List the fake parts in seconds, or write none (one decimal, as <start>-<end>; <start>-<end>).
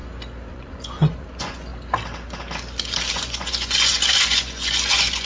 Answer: 0.5-1.7; 3.1-5.3